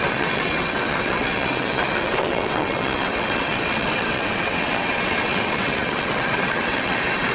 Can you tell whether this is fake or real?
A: fake